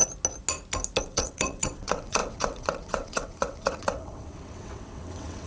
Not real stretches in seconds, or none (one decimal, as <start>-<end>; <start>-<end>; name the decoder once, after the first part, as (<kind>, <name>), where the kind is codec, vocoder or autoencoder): 1.0-5.5 (vocoder, WaveNeXt)